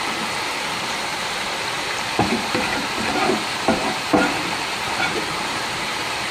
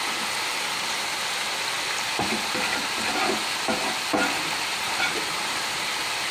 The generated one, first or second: first